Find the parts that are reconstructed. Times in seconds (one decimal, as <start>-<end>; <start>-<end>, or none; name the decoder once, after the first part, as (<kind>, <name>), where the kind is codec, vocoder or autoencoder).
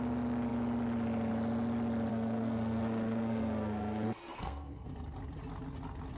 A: 2.1-4.9 (codec, SNAC)